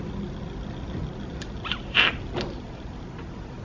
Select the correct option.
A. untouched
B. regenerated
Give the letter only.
A